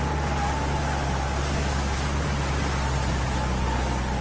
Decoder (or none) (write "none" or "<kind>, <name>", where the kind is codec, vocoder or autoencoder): none